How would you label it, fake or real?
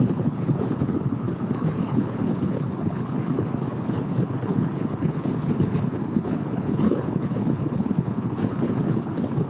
fake